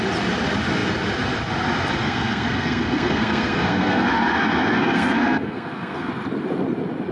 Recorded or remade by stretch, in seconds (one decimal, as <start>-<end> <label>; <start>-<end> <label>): 0.0-2.0 recorded; 2.0-6.1 remade; 6.1-7.1 recorded